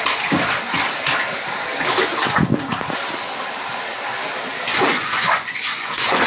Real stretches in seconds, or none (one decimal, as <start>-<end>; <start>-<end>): 0.0-4.7